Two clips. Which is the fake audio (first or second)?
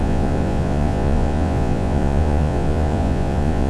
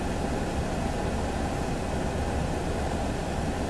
first